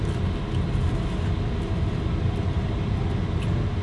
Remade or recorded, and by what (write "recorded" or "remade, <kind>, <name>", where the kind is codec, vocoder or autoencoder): recorded